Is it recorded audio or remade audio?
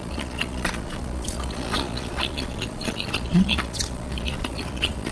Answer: remade